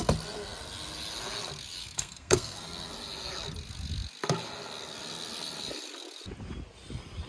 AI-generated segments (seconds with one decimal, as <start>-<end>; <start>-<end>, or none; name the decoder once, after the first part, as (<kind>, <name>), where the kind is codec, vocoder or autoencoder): 1.8-2.9 (codec, SNAC)